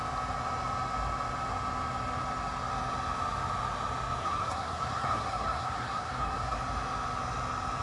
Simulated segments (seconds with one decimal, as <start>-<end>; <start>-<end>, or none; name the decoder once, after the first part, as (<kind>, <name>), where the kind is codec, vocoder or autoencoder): 4.2-6.6 (codec, SNAC)